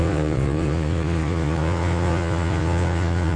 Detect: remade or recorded remade